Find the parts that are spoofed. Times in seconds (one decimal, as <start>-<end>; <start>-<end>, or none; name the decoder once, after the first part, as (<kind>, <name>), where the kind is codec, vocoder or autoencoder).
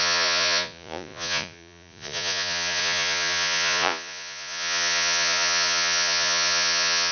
0.0-7.1 (vocoder, Vocos)